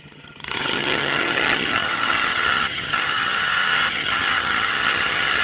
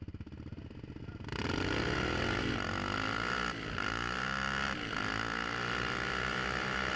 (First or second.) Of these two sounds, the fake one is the first